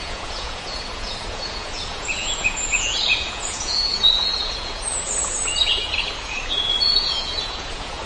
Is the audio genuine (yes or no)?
no